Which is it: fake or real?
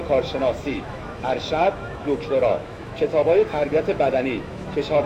fake